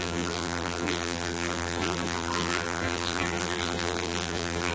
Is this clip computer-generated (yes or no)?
yes